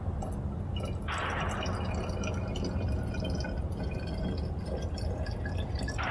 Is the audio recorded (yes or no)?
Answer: yes